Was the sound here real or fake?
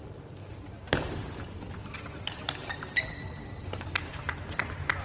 fake